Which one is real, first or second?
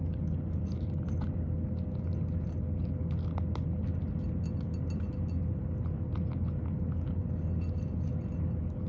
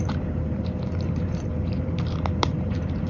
first